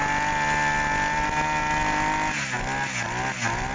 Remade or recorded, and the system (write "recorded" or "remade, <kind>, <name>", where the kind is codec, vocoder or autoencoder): recorded